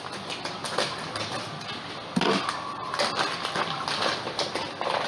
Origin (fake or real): real